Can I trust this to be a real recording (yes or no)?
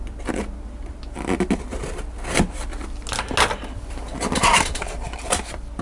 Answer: yes